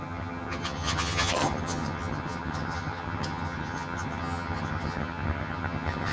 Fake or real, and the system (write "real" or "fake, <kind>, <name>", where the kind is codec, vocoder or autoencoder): fake, vocoder, HiFi-GAN